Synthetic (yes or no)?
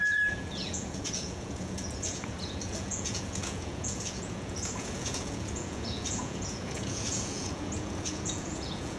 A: yes